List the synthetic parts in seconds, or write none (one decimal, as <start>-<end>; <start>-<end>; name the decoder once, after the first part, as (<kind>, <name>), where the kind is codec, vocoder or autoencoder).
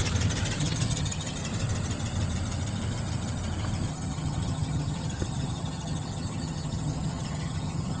0.6-1.4 (vocoder, HiFi-GAN); 3.9-8.0